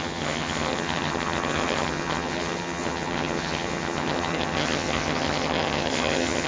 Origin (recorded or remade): remade